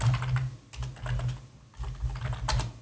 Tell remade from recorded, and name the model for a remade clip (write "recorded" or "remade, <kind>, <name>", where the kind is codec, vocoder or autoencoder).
recorded